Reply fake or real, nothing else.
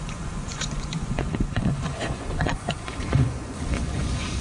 fake